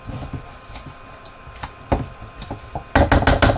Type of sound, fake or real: real